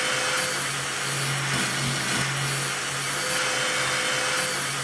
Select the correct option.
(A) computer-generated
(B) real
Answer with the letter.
B